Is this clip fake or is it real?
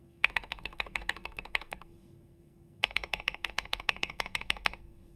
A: fake